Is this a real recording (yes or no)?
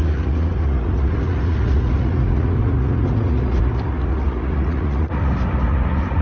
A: no